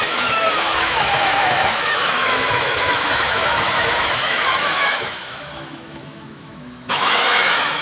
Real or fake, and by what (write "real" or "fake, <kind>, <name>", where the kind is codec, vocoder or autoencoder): fake, autoencoder, DAC-VAE